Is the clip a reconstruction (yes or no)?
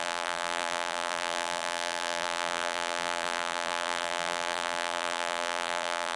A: yes